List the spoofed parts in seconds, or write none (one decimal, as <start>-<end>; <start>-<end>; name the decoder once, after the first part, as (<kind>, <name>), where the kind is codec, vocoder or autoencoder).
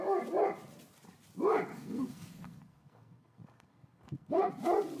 1.7-4.5 (codec, SNAC)